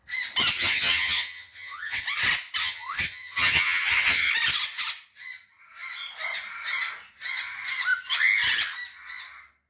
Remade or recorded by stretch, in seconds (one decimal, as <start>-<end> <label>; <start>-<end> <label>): 0.0-0.5 recorded; 0.5-2.0 remade; 2.0-2.6 recorded; 2.6-4.3 remade; 4.3-9.7 recorded